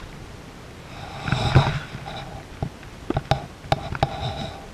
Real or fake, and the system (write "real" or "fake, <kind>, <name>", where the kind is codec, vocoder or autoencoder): real